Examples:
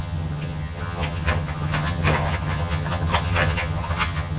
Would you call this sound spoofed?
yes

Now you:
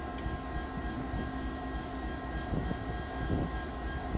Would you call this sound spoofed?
no